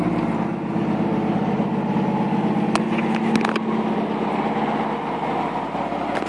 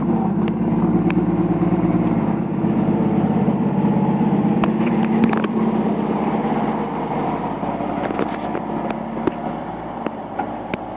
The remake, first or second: second